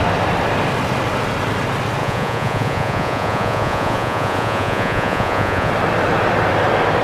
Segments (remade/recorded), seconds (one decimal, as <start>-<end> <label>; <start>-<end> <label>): 0.0-2.0 recorded; 2.0-5.7 remade; 5.7-7.0 recorded